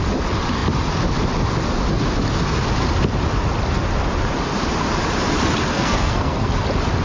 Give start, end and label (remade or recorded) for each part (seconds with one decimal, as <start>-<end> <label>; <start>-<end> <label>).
0.0-5.7 recorded; 5.7-6.5 remade; 6.5-7.0 recorded